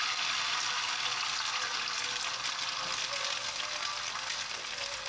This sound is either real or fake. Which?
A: real